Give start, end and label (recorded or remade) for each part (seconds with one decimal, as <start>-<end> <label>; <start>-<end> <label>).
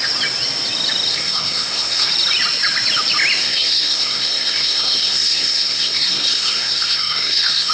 0.0-1.1 recorded; 1.1-2.1 remade; 2.1-3.4 recorded; 3.4-7.7 remade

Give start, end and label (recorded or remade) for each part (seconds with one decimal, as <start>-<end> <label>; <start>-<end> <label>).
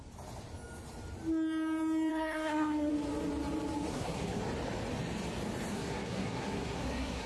0.0-2.1 recorded; 2.1-2.9 remade; 2.9-3.9 recorded; 3.9-4.4 remade; 4.4-5.7 recorded; 5.7-7.3 remade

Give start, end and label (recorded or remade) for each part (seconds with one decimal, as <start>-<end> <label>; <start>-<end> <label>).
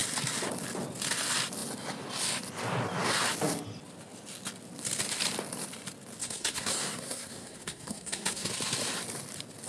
0.0-6.2 recorded; 6.2-8.5 remade; 8.5-9.7 recorded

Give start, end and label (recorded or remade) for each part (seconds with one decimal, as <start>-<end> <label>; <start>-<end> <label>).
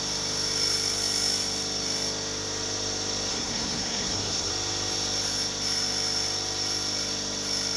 0.0-3.3 recorded; 3.3-4.5 remade; 4.5-7.8 recorded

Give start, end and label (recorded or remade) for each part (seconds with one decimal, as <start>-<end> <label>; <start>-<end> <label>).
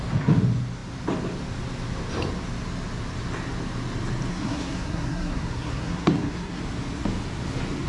0.0-4.3 recorded; 4.3-6.6 remade; 6.6-7.9 recorded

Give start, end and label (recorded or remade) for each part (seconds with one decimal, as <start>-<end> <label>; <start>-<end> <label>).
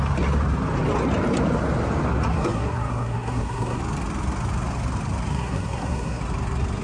0.0-2.3 recorded; 2.3-3.8 remade; 3.8-5.3 recorded; 5.3-6.2 remade; 6.2-6.8 recorded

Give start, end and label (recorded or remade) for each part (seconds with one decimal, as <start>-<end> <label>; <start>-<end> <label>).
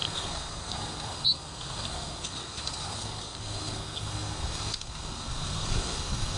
0.0-6.4 remade